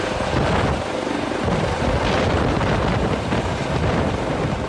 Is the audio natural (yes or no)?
yes